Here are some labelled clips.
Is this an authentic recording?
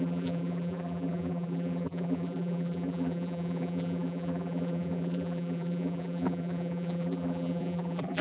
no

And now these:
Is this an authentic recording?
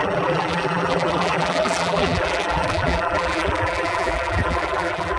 no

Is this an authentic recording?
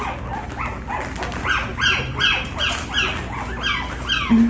yes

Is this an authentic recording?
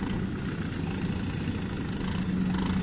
yes